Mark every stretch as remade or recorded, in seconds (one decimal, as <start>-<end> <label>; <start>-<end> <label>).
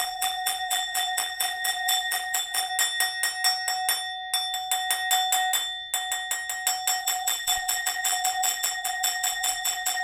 0.0-2.7 remade; 2.7-7.0 recorded; 7.0-10.0 remade